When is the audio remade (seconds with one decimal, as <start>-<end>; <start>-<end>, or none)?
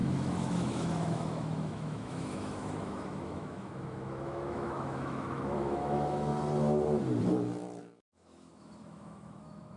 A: 0.0-6.3; 7.8-9.8